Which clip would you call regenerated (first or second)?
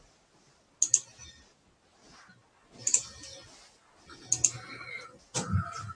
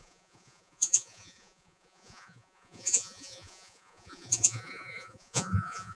second